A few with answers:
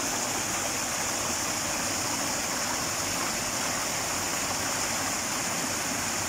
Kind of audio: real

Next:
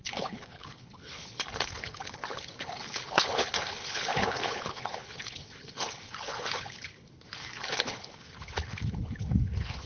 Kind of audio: fake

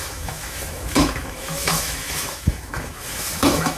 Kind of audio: fake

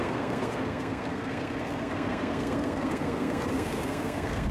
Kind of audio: fake